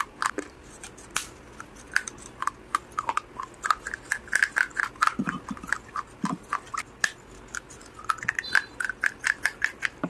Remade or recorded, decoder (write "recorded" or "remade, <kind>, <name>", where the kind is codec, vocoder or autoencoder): recorded